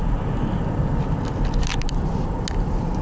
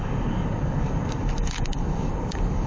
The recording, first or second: first